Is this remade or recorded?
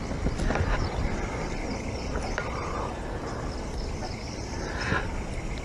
recorded